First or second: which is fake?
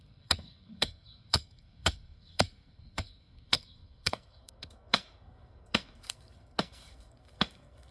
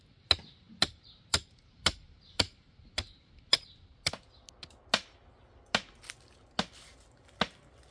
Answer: first